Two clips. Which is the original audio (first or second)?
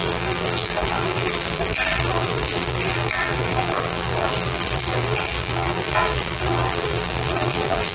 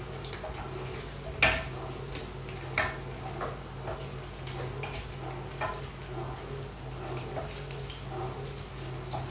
second